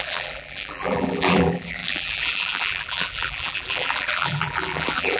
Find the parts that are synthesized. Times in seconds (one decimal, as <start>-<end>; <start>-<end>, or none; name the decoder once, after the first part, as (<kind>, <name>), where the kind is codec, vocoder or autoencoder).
0.0-5.2 (vocoder, BigVGAN v2)